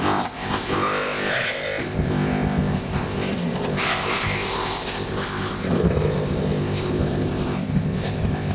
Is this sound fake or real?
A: fake